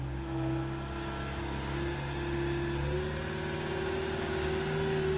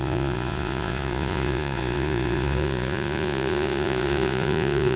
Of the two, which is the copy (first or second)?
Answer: second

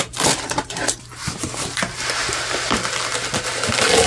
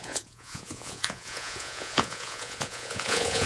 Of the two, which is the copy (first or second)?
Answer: second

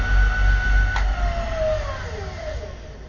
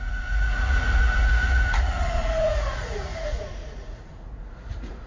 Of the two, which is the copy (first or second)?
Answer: second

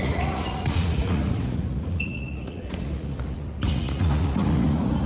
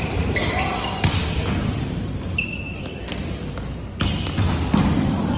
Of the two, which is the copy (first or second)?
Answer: first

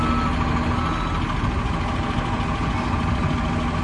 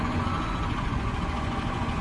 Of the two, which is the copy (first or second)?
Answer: second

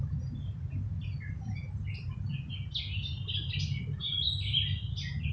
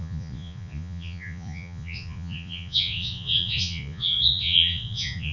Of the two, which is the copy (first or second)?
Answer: second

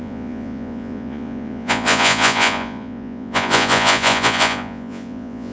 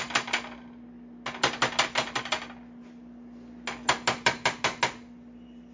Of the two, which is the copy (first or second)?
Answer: first